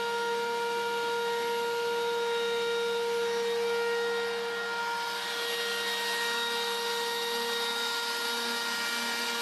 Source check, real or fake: real